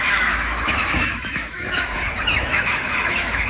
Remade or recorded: remade